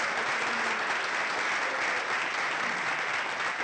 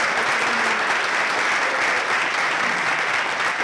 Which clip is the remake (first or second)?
second